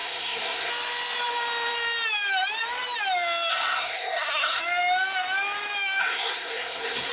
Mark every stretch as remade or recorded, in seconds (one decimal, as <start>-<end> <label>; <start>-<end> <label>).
0.0-0.7 remade; 0.7-3.5 recorded; 3.5-4.6 remade; 4.6-6.0 recorded; 6.0-7.1 remade